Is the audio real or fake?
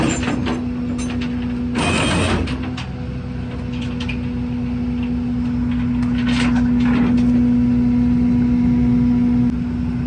real